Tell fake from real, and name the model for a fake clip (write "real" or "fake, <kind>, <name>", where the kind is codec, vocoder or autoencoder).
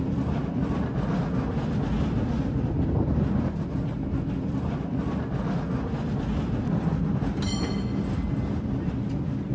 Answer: real